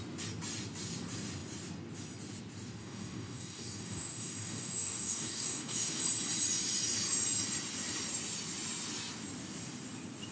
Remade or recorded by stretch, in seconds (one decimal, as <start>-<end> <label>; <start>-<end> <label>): 0.0-2.8 recorded; 2.8-6.0 remade; 6.0-10.3 recorded